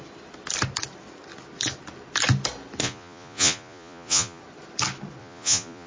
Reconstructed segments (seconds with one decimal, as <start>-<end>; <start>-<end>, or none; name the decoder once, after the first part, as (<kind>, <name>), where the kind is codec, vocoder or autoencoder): 2.8-4.4 (vocoder, Vocos); 5.2-5.9